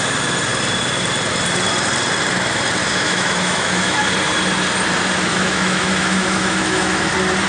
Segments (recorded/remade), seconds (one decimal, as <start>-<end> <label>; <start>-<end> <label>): 0.0-2.8 recorded; 2.8-4.0 remade; 4.0-5.3 recorded; 5.3-7.1 remade; 7.1-7.5 recorded